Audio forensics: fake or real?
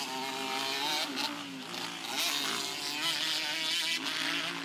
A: real